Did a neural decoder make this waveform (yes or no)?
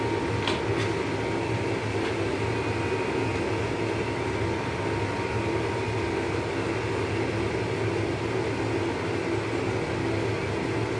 no